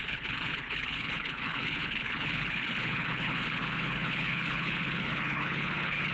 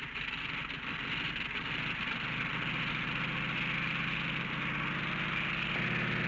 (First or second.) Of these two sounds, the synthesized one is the first